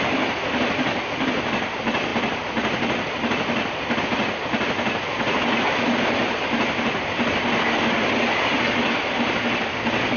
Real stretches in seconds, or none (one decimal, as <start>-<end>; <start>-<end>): 0.0-10.2

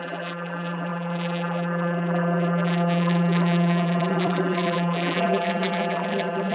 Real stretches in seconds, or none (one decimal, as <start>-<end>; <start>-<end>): none

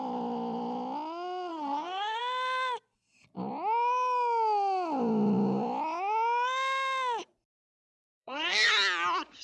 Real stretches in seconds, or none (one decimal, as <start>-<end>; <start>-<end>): 0.0-1.5; 2.2-8.2; 8.7-9.4

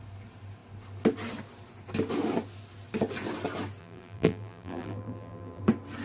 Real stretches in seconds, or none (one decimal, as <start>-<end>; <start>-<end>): 0.0-3.8; 5.6-6.0

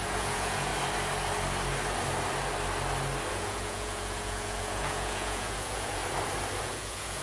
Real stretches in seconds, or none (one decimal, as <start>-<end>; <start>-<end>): 0.7-3.3; 6.0-6.6

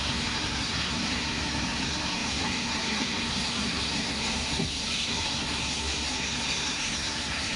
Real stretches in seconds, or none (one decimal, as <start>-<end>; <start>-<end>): none

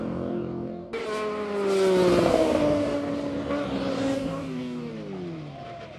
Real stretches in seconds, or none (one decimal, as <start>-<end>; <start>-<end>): 1.0-2.3; 3.1-3.9; 4.9-6.0

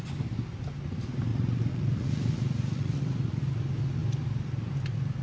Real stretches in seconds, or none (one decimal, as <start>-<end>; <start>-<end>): 0.0-1.3; 3.4-5.2